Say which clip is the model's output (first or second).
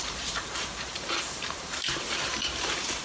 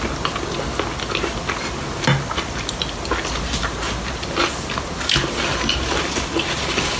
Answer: first